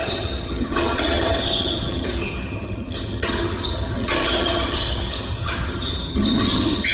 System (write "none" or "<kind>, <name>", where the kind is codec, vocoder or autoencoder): vocoder, HiFi-GAN